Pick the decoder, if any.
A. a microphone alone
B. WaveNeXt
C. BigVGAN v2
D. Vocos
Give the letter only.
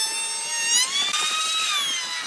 A